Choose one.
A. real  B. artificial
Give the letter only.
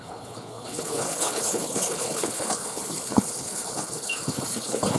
B